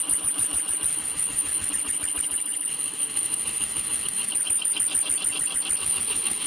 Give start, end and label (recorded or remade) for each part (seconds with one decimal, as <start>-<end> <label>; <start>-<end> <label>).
0.0-0.9 recorded; 0.9-1.7 remade; 1.7-2.7 recorded; 2.7-4.3 remade; 4.3-5.8 recorded; 5.8-6.5 remade